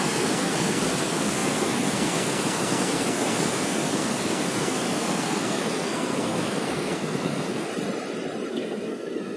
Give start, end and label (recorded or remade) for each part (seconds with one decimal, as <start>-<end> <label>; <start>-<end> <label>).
0.0-7.7 remade; 7.7-8.5 recorded; 8.5-9.4 remade